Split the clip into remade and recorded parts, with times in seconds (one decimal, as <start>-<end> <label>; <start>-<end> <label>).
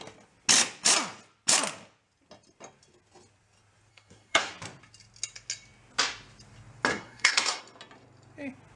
0.0-3.9 recorded; 3.9-4.5 remade; 4.5-6.9 recorded; 6.9-7.6 remade; 7.6-8.8 recorded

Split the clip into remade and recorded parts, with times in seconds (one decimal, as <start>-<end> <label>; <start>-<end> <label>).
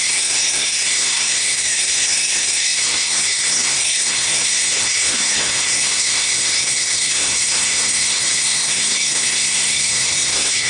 0.0-10.7 remade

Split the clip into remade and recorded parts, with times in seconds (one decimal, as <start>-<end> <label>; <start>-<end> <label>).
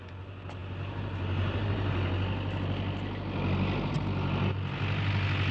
0.0-5.5 recorded